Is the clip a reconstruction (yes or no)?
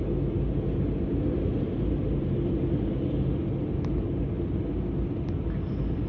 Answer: no